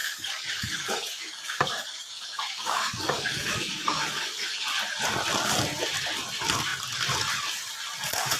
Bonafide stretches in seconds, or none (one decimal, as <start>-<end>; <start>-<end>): 4.6-8.4